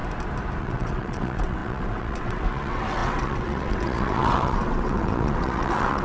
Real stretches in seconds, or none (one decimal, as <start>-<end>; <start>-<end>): 0.0-0.6